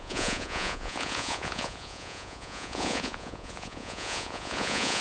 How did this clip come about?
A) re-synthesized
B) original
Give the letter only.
A